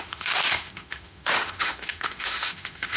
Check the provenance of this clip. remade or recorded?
remade